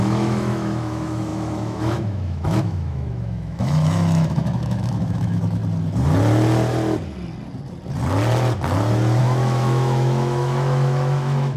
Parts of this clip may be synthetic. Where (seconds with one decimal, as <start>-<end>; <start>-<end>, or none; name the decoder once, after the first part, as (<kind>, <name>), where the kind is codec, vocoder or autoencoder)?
0.0-5.6 (autoencoder, DAC-VAE); 9.2-11.6